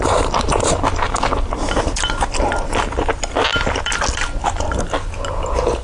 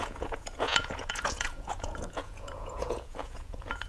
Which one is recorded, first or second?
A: first